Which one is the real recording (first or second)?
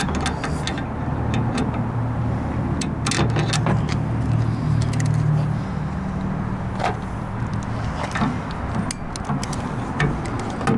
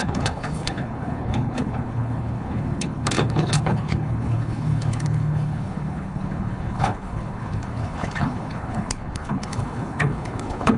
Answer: first